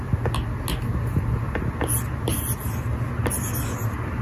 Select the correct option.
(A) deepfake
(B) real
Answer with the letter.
B